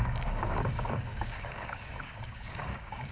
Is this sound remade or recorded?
remade